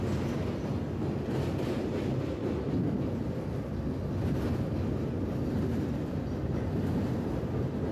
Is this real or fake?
real